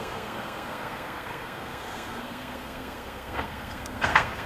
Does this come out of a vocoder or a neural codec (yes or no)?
yes